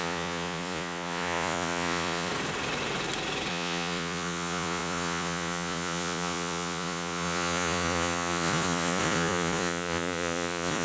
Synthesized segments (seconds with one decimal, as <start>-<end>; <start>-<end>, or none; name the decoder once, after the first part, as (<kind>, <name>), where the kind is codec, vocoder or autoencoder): 0.0-2.3 (vocoder, Vocos); 3.5-10.8